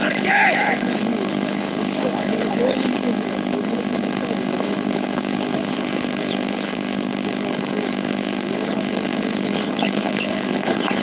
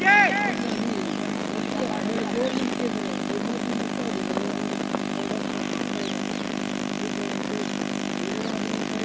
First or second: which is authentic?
second